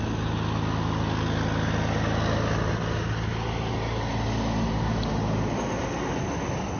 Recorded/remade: recorded